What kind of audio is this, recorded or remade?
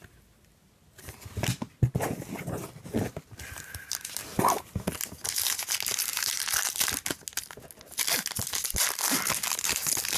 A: recorded